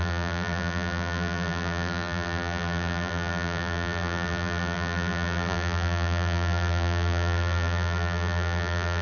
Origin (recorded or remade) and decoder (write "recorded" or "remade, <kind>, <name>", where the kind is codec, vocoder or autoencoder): remade, vocoder, BigVGAN v2